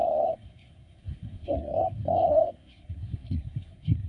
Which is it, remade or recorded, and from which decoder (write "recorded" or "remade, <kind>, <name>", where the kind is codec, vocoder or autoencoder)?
remade, codec, SNAC